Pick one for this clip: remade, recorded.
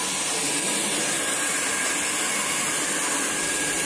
recorded